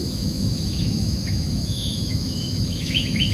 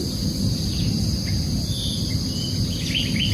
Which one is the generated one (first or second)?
first